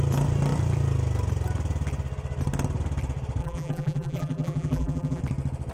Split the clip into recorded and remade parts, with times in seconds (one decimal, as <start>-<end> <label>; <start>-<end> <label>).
0.0-3.4 recorded; 3.4-5.2 remade; 5.2-5.7 recorded